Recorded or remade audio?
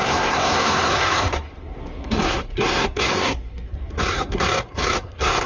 remade